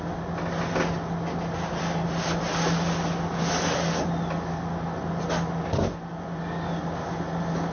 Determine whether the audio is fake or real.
real